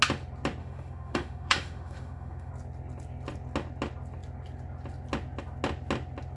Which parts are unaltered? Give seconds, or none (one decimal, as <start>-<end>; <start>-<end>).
0.0-0.6; 2.5-6.4